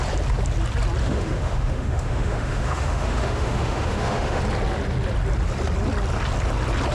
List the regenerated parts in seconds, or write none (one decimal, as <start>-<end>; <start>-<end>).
1.0-4.4